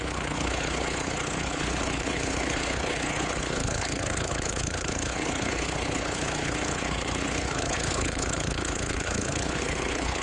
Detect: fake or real fake